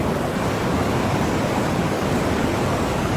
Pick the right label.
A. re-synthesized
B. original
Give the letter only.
A